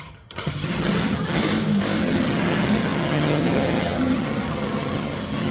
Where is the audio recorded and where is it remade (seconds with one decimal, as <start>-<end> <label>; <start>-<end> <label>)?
0.0-1.4 remade; 1.4-2.0 recorded; 2.0-5.5 remade